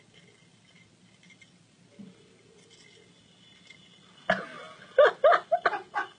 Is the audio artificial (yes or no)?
no